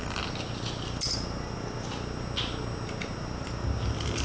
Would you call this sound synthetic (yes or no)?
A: no